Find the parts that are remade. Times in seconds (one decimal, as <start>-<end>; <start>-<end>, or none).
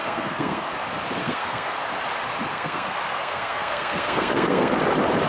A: 0.0-0.7; 1.2-1.8; 2.5-4.8